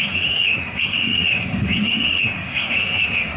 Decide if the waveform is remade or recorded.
remade